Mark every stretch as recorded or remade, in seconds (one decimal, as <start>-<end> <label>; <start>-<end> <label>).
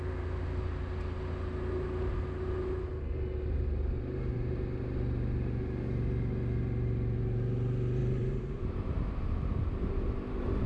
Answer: 0.0-8.0 recorded; 8.0-9.2 remade; 9.2-10.7 recorded